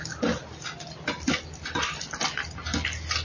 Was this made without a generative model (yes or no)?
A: yes